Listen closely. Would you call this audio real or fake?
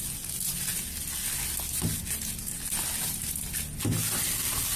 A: real